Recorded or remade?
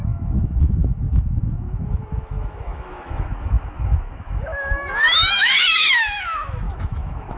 remade